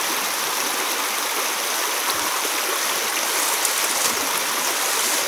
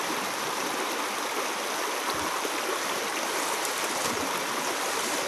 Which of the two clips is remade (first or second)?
second